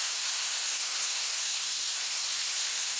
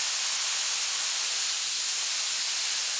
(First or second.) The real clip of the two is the second